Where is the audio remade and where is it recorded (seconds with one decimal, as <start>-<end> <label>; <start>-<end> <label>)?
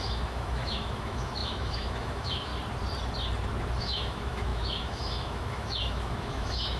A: 0.0-2.5 remade; 2.5-3.8 recorded; 3.8-6.8 remade